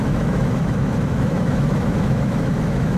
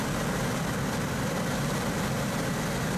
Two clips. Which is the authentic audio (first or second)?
second